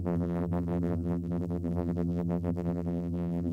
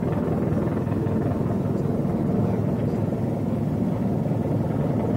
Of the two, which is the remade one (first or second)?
first